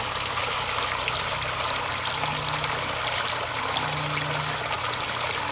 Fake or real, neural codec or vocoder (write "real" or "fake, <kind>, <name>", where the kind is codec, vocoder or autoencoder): real